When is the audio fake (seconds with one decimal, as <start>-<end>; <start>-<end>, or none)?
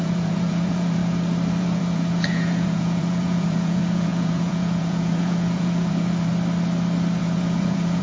0.0-1.0; 1.6-6.3; 7.2-8.0